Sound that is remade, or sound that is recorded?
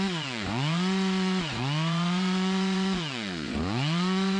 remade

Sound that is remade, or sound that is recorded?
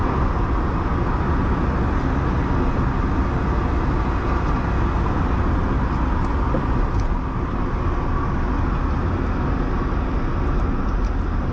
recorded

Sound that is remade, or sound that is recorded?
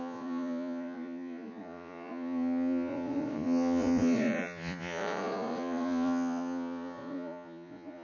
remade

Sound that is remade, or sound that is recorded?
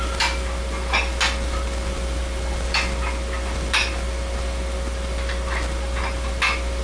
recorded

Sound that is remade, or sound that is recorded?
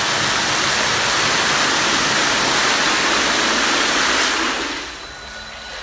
recorded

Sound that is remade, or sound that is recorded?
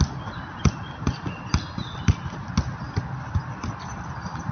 recorded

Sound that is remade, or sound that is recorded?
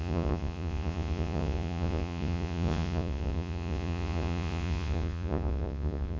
remade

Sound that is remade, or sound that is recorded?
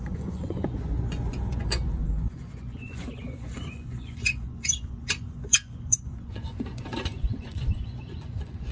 remade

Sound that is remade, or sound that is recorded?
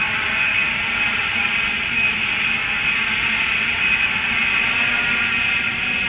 recorded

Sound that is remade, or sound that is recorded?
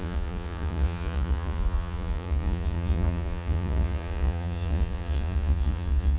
remade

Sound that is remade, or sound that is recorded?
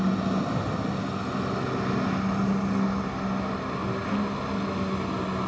recorded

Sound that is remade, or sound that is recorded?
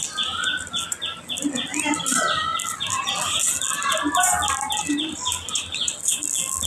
recorded